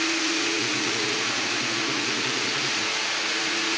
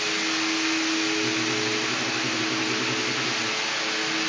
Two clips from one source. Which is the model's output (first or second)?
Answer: first